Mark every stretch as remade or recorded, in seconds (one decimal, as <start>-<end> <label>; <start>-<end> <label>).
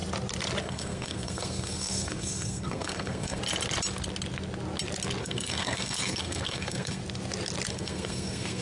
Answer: 0.0-0.6 recorded; 0.6-3.4 remade; 3.4-5.2 recorded; 5.2-7.0 remade; 7.0-7.7 recorded; 7.7-8.6 remade